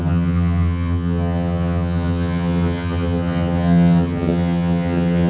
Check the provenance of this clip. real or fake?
fake